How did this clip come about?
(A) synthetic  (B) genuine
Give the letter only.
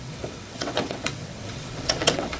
A